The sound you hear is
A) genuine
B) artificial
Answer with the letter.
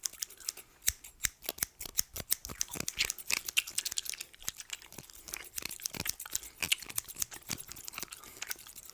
A